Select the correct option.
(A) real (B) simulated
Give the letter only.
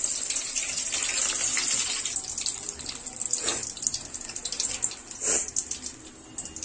A